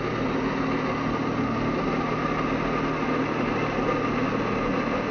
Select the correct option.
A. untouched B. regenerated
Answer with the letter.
A